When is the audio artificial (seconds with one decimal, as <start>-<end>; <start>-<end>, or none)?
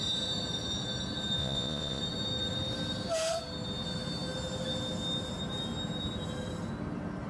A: 1.4-2.0